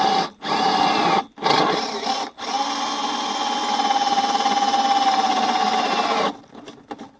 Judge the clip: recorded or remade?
recorded